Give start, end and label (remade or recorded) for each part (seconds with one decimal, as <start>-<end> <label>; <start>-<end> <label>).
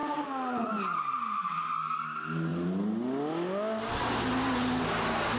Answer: 0.0-0.7 remade; 0.7-5.4 recorded